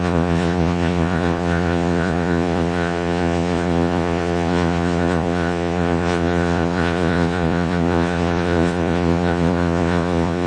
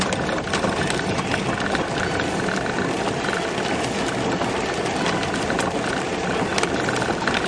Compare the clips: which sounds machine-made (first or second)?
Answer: first